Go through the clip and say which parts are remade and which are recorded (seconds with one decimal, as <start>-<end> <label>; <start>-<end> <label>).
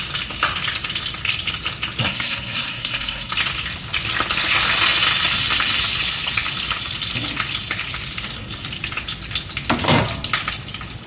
0.0-2.0 recorded; 2.0-3.3 remade; 3.3-11.1 recorded